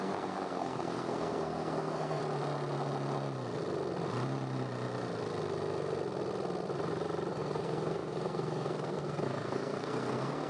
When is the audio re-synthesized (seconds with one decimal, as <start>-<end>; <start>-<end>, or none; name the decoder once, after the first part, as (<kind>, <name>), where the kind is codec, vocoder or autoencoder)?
0.0-2.2 (codec, SNAC); 7.3-10.5